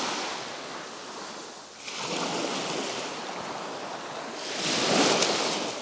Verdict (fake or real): real